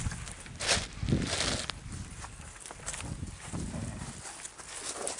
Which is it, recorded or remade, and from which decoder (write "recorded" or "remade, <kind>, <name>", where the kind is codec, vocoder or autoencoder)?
recorded